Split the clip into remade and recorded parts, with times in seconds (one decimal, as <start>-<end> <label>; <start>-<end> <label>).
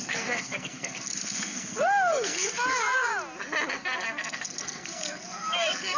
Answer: 0.0-3.1 remade; 3.1-3.7 recorded; 3.7-6.0 remade